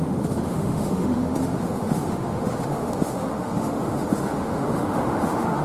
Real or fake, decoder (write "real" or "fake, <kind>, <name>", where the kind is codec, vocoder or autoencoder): fake, autoencoder, DAC-VAE